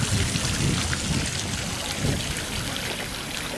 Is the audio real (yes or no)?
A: yes